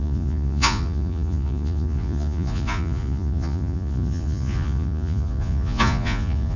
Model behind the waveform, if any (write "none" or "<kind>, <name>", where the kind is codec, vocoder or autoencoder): vocoder, Vocos